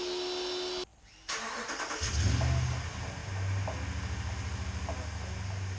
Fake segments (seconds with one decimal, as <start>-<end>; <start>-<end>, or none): none